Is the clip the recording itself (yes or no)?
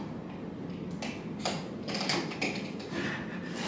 yes